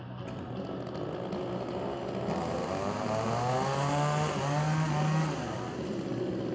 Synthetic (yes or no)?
no